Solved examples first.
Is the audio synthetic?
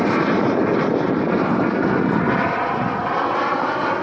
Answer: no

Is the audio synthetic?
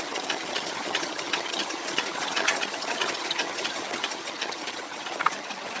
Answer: yes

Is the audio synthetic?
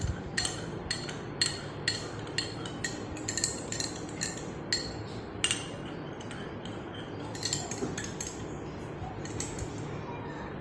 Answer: no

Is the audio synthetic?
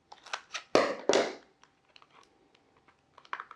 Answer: no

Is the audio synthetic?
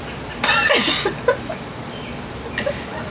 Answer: no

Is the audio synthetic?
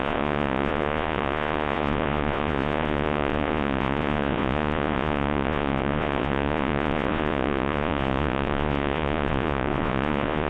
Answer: yes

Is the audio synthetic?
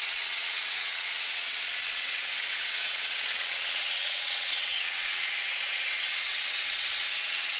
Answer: yes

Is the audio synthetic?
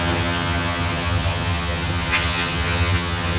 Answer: yes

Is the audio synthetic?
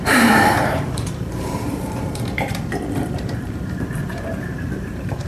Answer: yes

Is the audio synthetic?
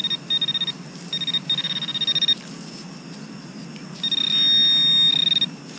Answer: no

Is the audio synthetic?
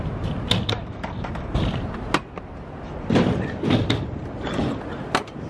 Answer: no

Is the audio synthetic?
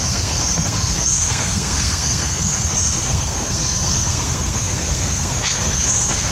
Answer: yes